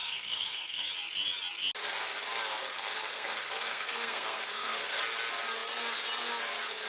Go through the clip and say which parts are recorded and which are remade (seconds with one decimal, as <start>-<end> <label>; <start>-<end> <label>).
0.0-0.9 remade; 0.9-2.6 recorded; 2.6-5.0 remade; 5.0-6.9 recorded